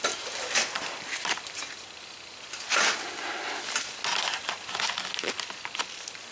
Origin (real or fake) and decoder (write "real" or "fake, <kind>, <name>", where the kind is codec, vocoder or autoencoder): real